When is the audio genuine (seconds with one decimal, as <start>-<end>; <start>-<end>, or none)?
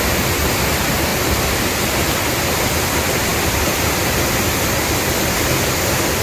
0.0-6.2